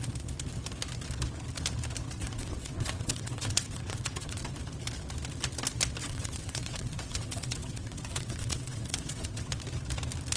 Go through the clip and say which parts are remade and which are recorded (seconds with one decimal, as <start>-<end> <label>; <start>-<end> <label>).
0.0-2.2 recorded; 2.2-4.4 remade; 4.4-6.0 recorded; 6.0-9.6 remade; 9.6-10.4 recorded